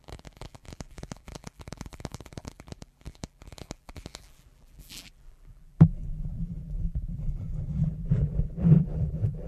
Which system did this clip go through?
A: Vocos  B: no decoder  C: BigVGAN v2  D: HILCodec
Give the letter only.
C